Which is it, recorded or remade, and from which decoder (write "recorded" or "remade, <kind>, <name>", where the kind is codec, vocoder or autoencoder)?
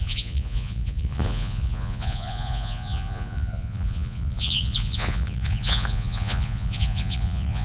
remade, vocoder, Vocos